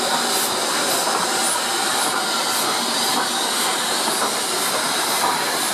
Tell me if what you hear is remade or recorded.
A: recorded